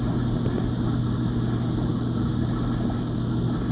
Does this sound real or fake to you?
real